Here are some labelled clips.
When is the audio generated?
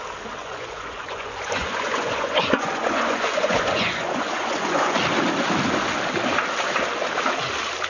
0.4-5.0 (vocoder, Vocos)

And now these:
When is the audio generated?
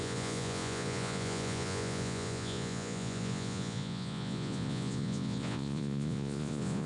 0.0-6.9 (vocoder, Vocos)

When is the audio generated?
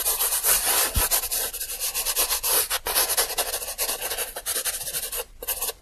none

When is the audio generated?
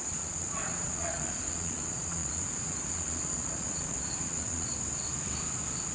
0.0-4.7 (vocoder, Vocos)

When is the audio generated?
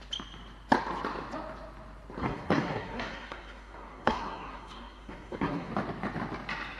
2.2-5.7 (codec, SNAC)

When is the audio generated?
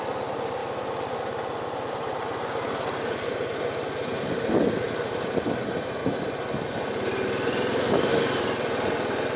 0.0-0.6 (vocoder, BigVGAN v2); 1.9-6.0; 8.4-9.4